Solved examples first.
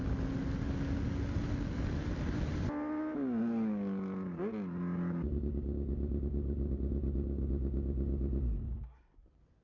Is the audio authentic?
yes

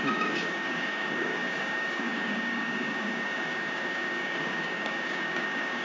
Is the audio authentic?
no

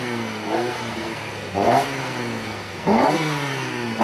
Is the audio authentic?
no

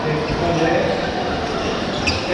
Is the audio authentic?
yes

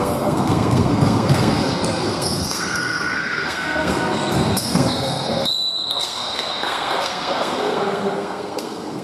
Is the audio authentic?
no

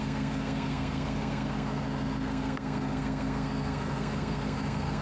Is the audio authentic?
no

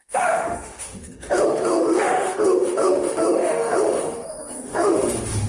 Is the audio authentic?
no